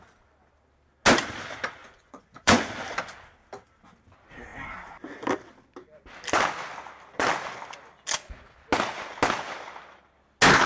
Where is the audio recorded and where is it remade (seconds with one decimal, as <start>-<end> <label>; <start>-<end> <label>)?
0.0-1.8 recorded; 1.8-2.7 remade; 2.7-10.7 recorded